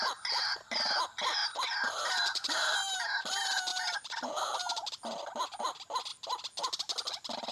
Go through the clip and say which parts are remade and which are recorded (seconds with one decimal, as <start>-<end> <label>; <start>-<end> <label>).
0.0-1.4 recorded; 1.4-3.2 remade; 3.2-3.7 recorded; 3.7-4.5 remade; 4.5-7.5 recorded